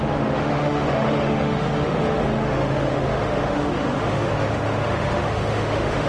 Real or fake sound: fake